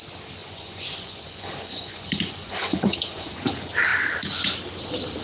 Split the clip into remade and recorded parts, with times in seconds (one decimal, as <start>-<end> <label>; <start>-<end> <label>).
0.0-0.4 recorded; 0.4-3.5 remade; 3.5-5.2 recorded